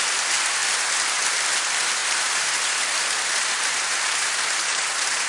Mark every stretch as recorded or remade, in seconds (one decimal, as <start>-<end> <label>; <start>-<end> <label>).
0.0-2.0 recorded; 2.0-5.3 remade